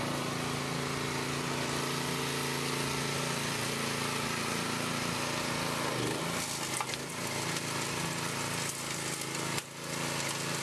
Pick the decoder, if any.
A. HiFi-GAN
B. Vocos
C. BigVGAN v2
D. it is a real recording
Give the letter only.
D